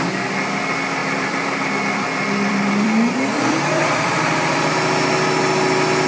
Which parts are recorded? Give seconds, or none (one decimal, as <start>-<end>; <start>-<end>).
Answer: 0.0-1.0; 4.7-6.1